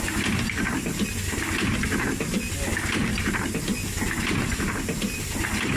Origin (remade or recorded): recorded